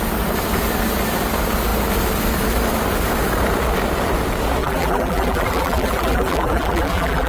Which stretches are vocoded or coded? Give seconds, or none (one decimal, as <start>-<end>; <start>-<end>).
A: 4.6-7.3